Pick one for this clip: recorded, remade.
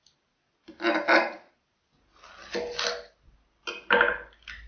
recorded